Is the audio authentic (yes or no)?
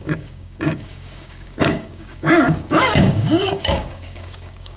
no